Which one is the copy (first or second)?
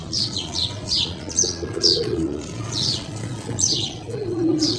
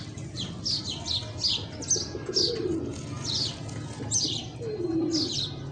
first